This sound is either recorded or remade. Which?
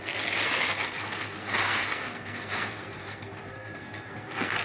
remade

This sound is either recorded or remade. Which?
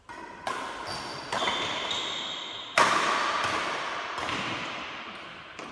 recorded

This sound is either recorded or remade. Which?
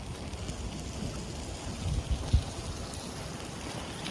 recorded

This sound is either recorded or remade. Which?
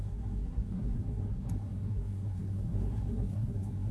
remade